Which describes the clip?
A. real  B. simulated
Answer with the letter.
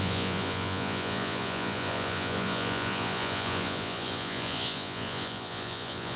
B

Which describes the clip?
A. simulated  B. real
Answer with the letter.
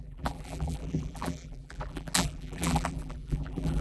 A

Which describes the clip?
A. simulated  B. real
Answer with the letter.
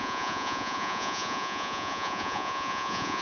A